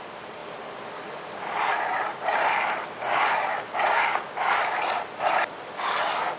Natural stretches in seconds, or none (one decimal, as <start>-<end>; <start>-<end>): 0.0-6.4